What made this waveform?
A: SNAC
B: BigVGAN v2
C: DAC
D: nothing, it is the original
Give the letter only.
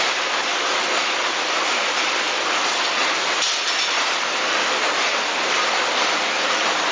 D